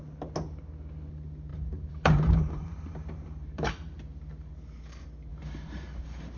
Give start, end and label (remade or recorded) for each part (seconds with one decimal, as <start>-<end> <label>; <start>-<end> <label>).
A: 0.0-1.5 recorded; 1.5-3.7 remade; 3.7-5.3 recorded; 5.3-6.4 remade